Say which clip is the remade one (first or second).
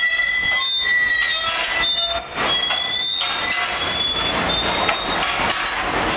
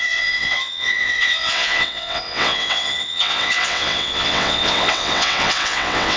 second